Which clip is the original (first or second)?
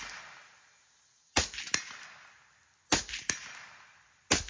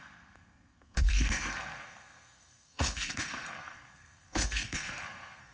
first